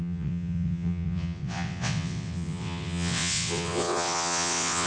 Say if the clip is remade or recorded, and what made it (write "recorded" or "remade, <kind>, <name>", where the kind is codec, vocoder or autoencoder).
remade, vocoder, WaveNeXt